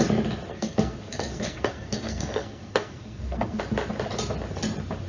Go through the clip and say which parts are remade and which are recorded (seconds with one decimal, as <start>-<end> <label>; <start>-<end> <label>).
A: 0.0-0.5 recorded; 0.5-3.6 remade; 3.6-5.1 recorded